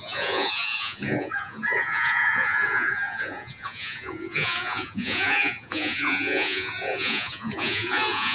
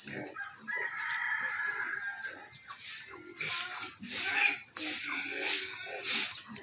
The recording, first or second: second